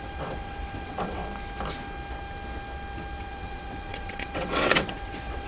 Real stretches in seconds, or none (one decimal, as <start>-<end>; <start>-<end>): 1.2-3.2